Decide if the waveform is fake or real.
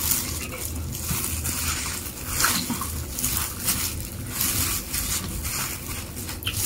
real